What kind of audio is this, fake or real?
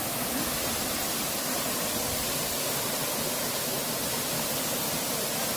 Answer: real